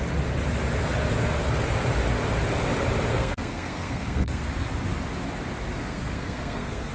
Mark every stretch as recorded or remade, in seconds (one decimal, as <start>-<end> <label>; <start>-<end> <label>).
0.0-3.1 recorded; 3.1-4.5 remade; 4.5-5.9 recorded; 5.9-6.9 remade